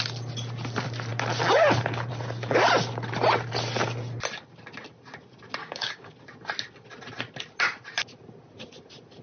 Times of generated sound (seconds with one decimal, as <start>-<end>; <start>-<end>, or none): 5.6-6.1